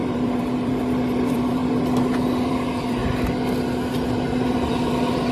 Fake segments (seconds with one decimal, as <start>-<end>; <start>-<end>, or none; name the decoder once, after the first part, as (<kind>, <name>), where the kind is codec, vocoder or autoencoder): 0.0-1.6 (vocoder, BigVGAN v2); 2.5-3.0; 4.5-5.3

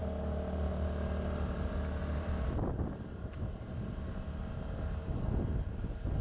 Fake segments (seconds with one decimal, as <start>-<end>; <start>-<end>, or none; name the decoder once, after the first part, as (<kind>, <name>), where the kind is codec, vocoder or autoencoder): 0.0-3.7 (vocoder, BigVGAN v2)

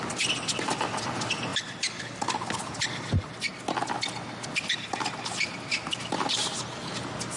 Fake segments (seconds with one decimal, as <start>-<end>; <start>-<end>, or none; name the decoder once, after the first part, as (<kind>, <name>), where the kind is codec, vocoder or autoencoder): none

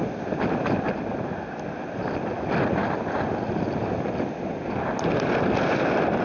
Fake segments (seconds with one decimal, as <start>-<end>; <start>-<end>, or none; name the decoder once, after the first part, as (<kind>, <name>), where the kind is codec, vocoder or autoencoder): 0.0-2.8 (vocoder, BigVGAN v2); 5.4-6.2

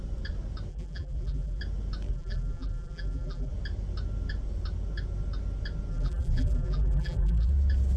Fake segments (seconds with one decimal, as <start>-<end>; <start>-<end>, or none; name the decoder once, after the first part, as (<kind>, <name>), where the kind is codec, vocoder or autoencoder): 0.7-1.6 (vocoder, BigVGAN v2); 2.1-3.5; 5.9-7.5

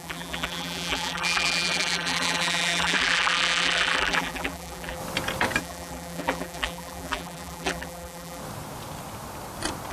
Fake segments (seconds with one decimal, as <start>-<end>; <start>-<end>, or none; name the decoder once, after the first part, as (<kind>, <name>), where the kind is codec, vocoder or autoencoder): 0.0-5.0 (vocoder, BigVGAN v2); 5.6-8.4

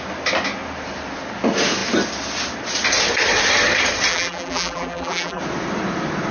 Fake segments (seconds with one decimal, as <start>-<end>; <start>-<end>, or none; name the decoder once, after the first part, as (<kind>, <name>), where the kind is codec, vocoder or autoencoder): 4.1-5.4 (vocoder, BigVGAN v2)

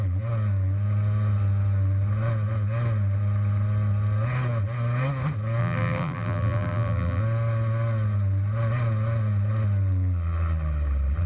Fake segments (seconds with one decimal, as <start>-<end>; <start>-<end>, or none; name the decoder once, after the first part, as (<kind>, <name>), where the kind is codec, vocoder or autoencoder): 5.6-7.2 (vocoder, BigVGAN v2)